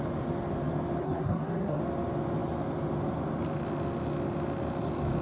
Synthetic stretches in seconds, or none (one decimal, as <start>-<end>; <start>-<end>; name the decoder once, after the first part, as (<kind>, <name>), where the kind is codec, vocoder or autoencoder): 1.0-1.8 (codec, SNAC)